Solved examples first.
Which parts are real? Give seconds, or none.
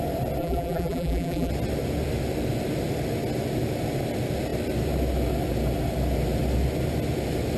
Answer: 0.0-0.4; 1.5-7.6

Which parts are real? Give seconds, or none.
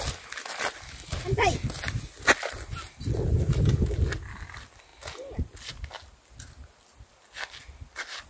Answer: 0.0-8.3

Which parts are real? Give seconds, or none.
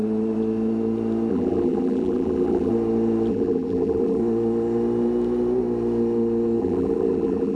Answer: 0.0-1.3; 2.7-3.3; 4.2-6.6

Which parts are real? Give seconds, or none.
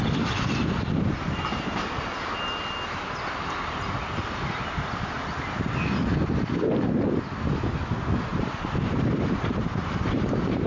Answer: 0.0-1.5; 2.0-8.3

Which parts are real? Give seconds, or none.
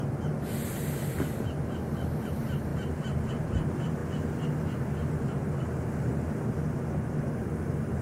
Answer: 0.0-8.0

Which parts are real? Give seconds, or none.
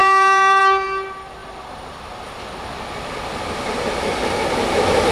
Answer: 0.6-5.1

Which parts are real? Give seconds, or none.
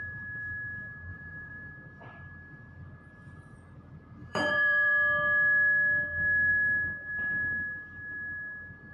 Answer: 0.0-1.1; 1.7-4.2; 4.9-8.9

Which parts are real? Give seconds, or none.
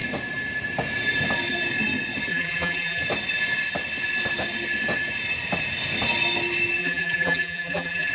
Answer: 0.0-2.3; 3.0-6.8